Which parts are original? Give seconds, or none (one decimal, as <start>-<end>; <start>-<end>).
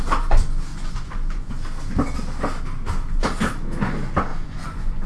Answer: 0.0-0.7; 1.5-4.3